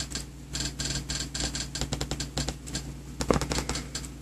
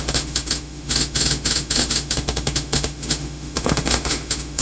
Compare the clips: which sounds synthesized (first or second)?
second